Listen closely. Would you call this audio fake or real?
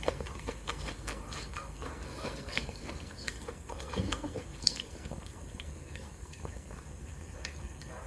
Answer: fake